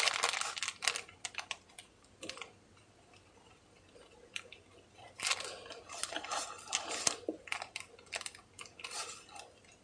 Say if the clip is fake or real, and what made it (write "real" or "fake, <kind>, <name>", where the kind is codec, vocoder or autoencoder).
real